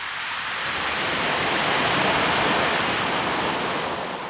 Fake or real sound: real